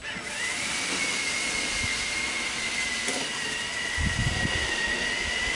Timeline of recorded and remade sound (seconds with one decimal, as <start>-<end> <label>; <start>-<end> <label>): 0.0-5.6 recorded